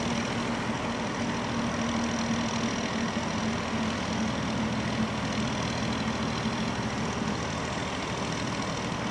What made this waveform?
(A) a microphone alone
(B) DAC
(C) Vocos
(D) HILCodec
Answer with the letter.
A